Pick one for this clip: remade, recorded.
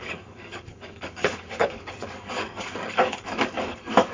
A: remade